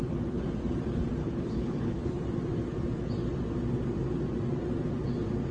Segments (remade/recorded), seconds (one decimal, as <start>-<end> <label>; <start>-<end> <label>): 0.0-1.2 recorded; 1.2-2.2 remade; 2.2-5.5 recorded